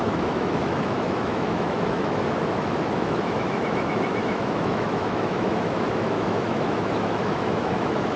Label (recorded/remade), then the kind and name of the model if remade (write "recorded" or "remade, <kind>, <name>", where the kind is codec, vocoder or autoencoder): remade, autoencoder, DAC-VAE